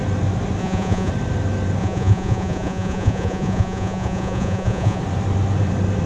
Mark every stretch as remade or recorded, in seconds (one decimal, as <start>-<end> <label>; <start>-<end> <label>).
0.0-0.6 recorded; 0.6-1.1 remade; 1.1-1.8 recorded; 1.8-5.0 remade; 5.0-6.1 recorded